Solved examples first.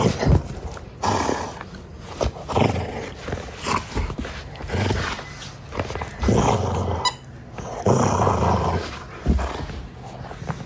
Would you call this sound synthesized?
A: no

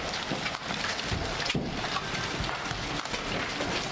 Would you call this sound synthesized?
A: no